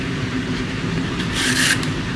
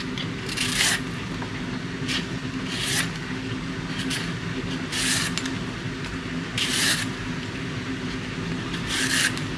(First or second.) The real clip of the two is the second